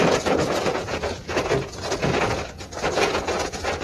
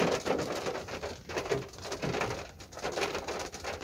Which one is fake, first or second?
first